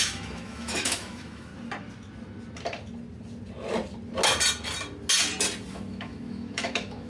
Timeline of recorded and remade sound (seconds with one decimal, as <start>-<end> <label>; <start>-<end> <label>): 0.0-1.5 remade; 1.5-5.7 recorded; 5.7-7.1 remade